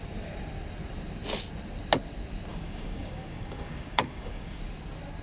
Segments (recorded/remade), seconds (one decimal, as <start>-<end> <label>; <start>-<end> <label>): 0.0-2.5 recorded; 2.5-4.6 remade; 4.6-5.2 recorded